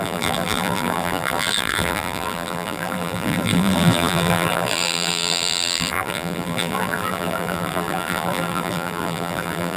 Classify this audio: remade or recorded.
remade